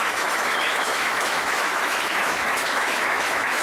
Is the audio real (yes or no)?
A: no